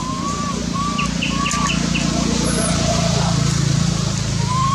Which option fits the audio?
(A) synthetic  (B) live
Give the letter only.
B